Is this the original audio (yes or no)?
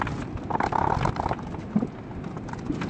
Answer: yes